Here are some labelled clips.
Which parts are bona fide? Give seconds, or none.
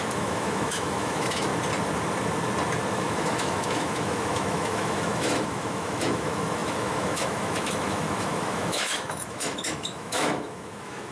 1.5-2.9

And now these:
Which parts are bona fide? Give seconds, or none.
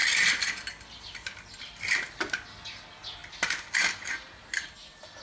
0.0-5.2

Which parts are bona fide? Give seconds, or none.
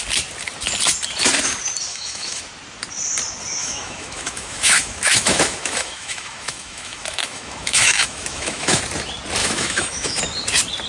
0.0-1.9; 2.4-3.6; 8.8-9.4; 10.2-10.9